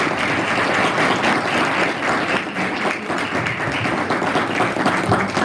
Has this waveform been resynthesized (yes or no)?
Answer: no